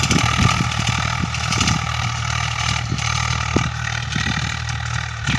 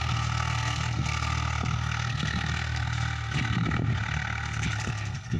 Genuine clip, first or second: first